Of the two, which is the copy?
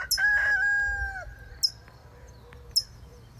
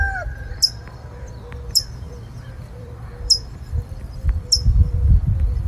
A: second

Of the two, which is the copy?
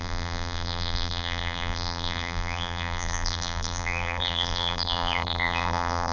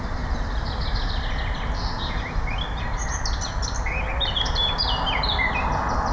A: first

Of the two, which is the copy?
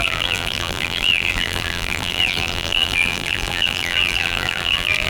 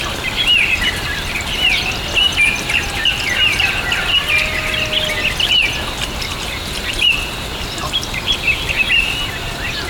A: first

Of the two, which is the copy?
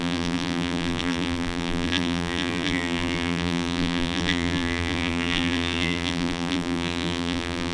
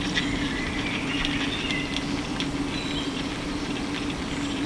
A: first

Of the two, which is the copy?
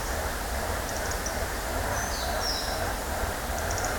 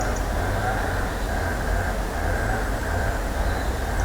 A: first